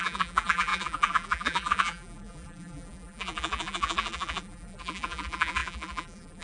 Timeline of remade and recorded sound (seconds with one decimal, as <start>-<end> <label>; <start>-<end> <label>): 0.0-6.4 remade